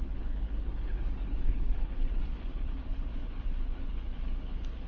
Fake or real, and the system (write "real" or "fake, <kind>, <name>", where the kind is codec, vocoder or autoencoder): fake, codec, HILCodec